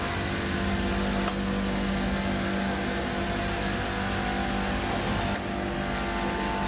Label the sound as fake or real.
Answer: real